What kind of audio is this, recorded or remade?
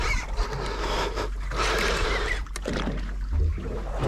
recorded